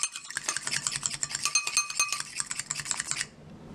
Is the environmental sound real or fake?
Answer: real